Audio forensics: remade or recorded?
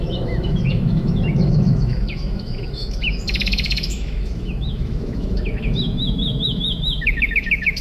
remade